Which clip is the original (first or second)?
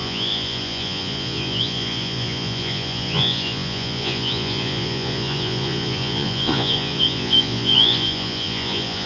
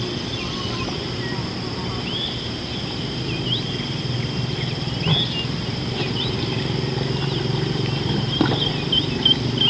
second